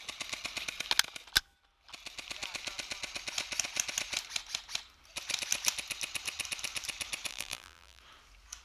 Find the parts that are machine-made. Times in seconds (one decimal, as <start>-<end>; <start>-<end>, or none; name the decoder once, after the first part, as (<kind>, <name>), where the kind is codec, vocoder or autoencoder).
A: 7.3-8.0 (vocoder, BigVGAN v2)